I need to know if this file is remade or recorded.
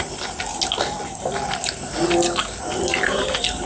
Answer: recorded